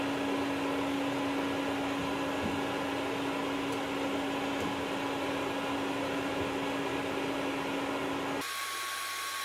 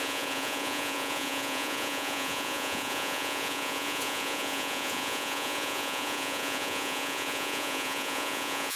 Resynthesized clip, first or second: second